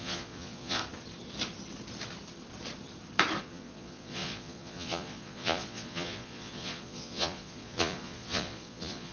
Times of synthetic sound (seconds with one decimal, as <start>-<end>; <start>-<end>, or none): 0.0-0.8; 3.4-9.1